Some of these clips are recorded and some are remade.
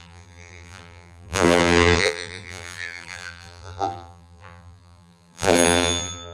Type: remade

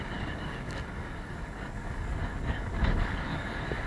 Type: remade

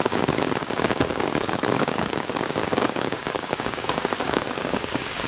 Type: remade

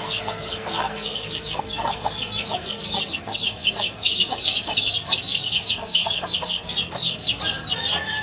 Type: remade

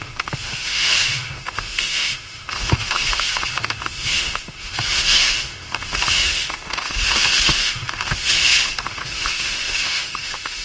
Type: remade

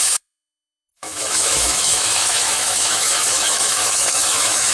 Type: remade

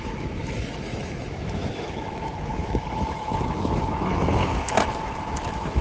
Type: remade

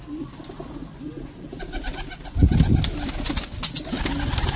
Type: recorded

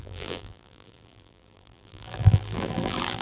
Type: remade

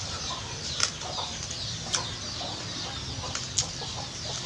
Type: recorded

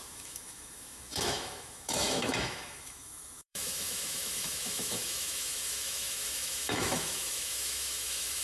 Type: remade